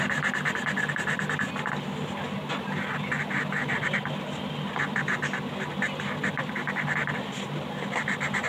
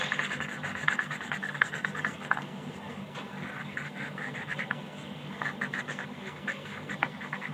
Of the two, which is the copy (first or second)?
second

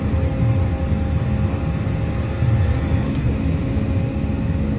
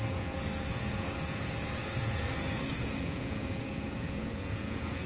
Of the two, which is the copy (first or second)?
second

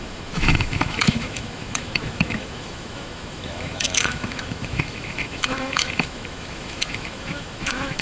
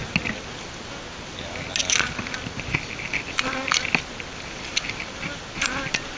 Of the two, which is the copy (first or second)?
first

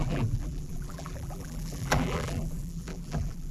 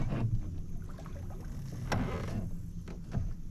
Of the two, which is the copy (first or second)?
first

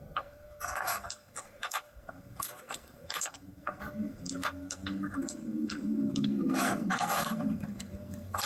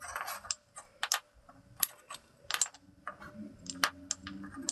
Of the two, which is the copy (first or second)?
first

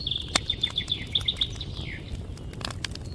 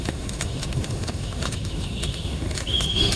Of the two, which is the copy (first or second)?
second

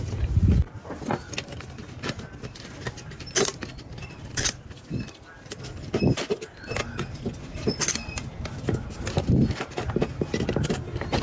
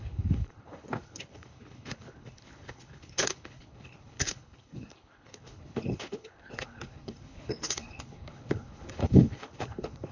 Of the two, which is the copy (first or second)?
second